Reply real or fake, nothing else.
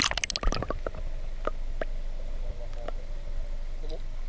real